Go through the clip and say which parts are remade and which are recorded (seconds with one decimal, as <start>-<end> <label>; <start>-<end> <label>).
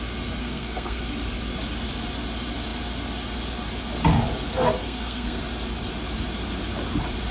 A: 0.0-0.4 recorded; 0.4-1.0 remade; 1.0-4.8 recorded; 4.8-5.4 remade; 5.4-7.3 recorded